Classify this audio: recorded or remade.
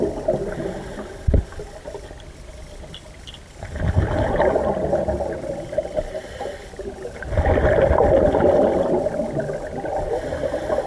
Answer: recorded